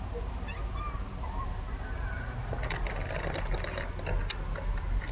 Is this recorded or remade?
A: recorded